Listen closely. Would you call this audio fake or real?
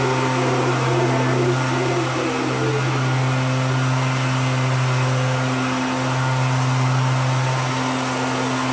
real